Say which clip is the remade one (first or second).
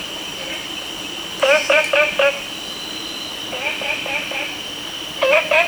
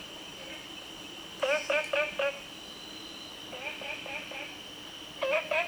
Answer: first